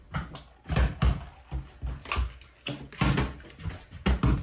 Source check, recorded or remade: recorded